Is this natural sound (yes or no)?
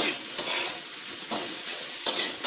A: no